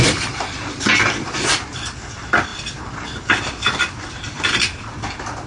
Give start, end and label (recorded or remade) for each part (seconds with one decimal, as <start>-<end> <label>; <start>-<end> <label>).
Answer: 0.0-2.5 remade; 2.5-3.4 recorded; 3.4-5.5 remade